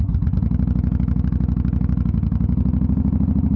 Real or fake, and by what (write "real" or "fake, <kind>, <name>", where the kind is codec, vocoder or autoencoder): real